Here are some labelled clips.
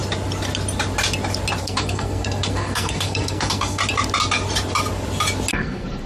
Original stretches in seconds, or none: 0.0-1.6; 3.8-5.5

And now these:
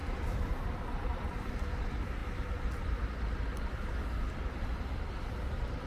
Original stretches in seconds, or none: 0.0-5.9

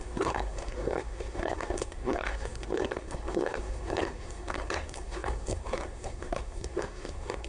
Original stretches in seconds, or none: none

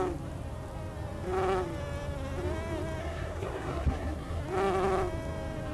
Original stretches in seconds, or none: 0.0-3.0; 4.4-5.7

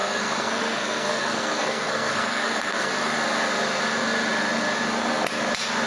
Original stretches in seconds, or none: 2.9-5.9